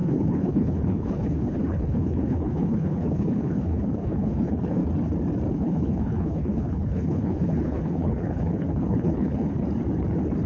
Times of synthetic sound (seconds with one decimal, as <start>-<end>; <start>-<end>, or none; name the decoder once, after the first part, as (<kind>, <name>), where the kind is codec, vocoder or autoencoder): 0.0-4.8 (codec, HILCodec); 5.5-9.6